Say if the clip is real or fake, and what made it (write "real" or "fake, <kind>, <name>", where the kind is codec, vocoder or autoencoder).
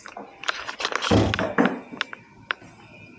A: real